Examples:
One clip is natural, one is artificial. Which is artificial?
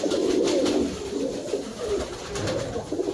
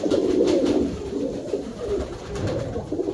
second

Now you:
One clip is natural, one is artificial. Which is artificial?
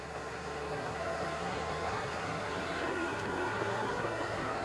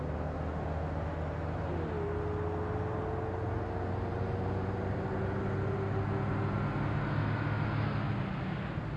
first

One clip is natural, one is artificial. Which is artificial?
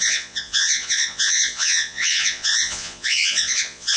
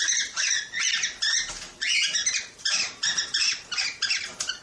first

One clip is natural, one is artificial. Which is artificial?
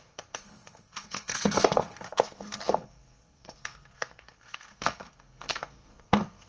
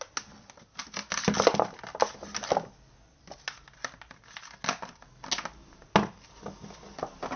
first